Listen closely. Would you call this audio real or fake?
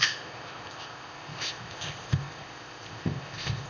fake